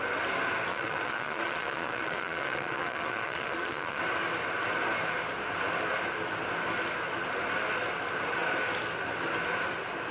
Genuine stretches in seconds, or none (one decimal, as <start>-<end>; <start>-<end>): 0.0-0.7; 4.0-10.1